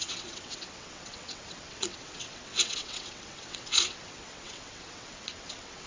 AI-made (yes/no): yes